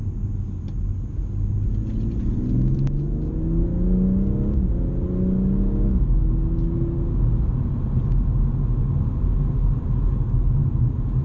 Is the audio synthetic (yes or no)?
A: no